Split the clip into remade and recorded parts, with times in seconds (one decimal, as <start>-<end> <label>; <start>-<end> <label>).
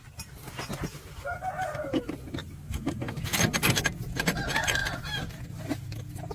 0.0-6.3 recorded